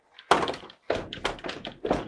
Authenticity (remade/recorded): recorded